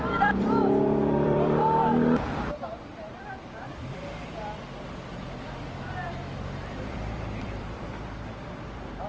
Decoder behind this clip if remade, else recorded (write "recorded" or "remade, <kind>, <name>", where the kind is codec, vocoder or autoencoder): remade, vocoder, BigVGAN v2